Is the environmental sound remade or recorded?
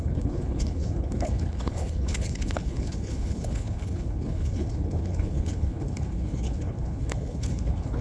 remade